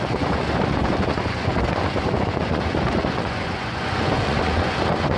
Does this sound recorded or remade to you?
remade